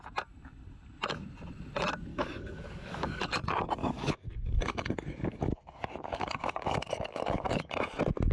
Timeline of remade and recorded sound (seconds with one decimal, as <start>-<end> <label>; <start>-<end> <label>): 0.0-2.1 recorded; 2.1-3.2 remade; 3.2-3.8 recorded; 3.8-7.7 remade; 7.7-8.3 recorded